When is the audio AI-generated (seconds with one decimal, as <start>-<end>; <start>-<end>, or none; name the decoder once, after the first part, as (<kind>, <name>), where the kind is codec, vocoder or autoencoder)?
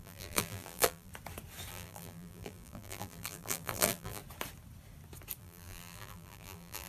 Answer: 0.0-1.1 (vocoder, BigVGAN v2); 1.7-4.2; 5.4-6.9